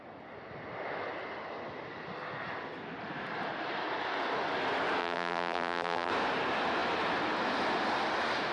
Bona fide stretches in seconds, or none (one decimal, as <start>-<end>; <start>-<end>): 0.0-5.0; 6.1-8.5